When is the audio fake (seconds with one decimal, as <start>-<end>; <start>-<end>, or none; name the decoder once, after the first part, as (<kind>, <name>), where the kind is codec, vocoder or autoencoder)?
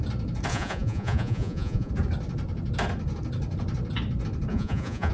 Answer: 0.5-1.9 (vocoder, Vocos); 4.5-5.1